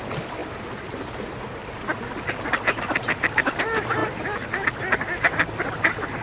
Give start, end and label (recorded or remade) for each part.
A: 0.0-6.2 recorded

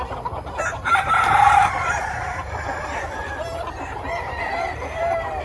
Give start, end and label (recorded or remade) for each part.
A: 0.0-5.4 remade